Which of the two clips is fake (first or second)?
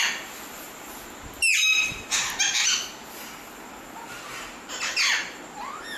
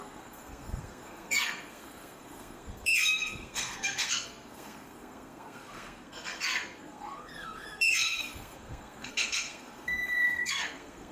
second